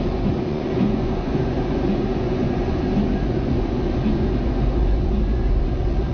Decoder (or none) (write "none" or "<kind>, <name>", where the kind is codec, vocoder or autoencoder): vocoder, Vocos